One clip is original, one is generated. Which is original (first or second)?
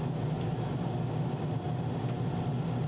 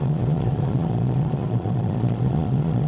first